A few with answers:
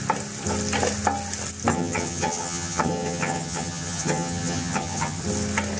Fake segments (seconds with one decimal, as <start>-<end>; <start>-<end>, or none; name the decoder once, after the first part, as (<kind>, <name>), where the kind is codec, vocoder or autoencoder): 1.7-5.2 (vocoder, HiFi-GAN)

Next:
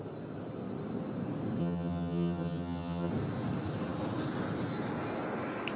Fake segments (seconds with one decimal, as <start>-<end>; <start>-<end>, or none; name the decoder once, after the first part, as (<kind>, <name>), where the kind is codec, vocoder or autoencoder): 1.6-3.1 (vocoder, HiFi-GAN)

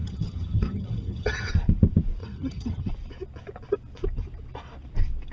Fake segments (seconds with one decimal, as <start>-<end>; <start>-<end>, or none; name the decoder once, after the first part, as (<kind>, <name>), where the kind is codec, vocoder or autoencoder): 0.0-1.5 (vocoder, HiFi-GAN); 2.2-2.9

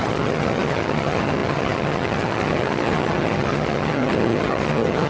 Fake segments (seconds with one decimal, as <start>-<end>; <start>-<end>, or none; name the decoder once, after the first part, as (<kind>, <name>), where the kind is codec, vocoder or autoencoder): 0.0-5.1 (vocoder, HiFi-GAN)

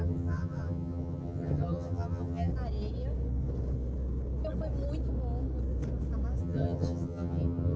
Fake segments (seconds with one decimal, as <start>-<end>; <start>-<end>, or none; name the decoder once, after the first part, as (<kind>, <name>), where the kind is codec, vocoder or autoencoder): 0.0-2.5 (vocoder, HiFi-GAN); 6.4-7.8

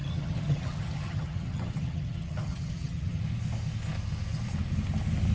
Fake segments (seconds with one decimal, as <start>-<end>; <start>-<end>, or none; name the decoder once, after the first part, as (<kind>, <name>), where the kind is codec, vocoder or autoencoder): 0.0-3.2 (vocoder, HiFi-GAN)

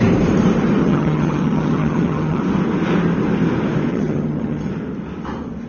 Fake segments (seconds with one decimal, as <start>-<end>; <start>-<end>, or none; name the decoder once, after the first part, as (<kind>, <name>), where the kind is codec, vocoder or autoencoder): 0.8-2.4 (vocoder, HiFi-GAN); 3.9-4.7